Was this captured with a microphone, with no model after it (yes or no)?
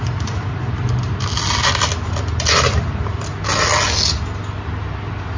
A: yes